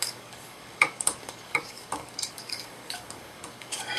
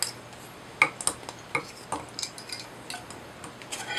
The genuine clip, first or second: second